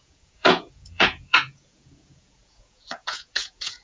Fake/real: fake